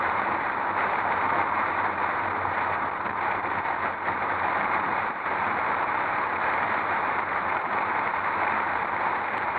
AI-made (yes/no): yes